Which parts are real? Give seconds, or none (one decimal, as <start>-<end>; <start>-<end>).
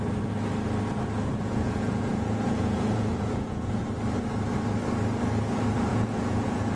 0.0-1.3; 3.8-5.9